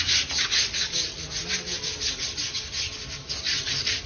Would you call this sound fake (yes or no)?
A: no